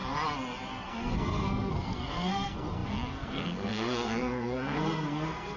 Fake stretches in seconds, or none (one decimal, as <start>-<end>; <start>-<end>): 0.7-5.6